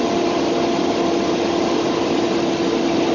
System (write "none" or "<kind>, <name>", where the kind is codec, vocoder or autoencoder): none